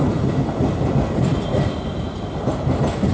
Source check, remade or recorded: recorded